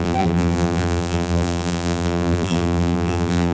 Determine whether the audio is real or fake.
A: fake